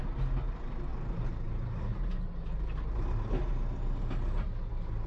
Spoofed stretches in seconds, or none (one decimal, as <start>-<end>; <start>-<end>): none